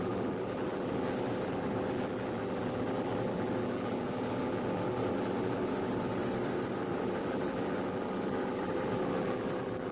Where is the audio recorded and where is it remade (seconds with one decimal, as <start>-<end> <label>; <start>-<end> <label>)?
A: 0.0-6.2 remade; 6.2-6.8 recorded; 6.8-9.9 remade